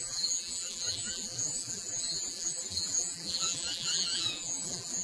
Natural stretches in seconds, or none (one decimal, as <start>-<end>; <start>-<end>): none

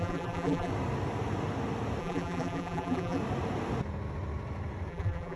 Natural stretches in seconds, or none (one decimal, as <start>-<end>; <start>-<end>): 0.7-2.0; 3.2-4.9